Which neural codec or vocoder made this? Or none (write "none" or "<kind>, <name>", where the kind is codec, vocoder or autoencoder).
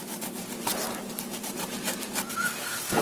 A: vocoder, BigVGAN v2